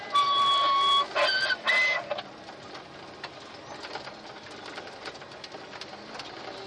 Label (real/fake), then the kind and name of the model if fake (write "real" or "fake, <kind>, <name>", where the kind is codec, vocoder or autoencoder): real